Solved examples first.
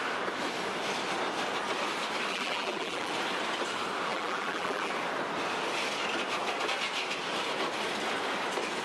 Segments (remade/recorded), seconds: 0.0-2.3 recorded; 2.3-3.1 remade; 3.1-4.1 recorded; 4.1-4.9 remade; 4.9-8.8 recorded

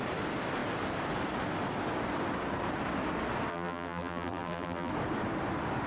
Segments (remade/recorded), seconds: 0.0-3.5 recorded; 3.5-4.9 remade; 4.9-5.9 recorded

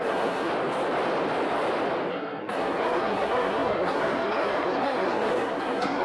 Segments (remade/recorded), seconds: 0.0-0.5 remade; 0.5-2.1 recorded; 2.1-6.0 remade